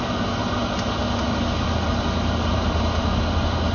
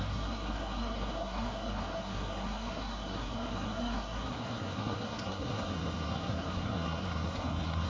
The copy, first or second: second